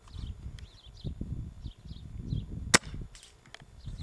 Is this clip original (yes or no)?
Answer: yes